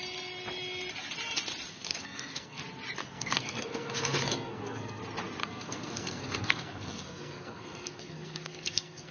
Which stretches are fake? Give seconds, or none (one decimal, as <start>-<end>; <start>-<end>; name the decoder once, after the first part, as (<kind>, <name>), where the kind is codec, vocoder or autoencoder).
1.7-2.6 (codec, SNAC); 3.0-5.0; 5.4-9.1